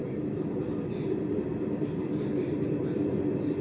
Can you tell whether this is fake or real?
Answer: real